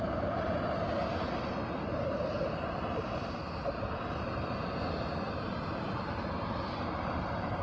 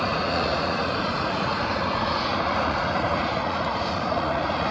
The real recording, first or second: first